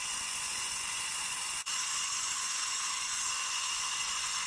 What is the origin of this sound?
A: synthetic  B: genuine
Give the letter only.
A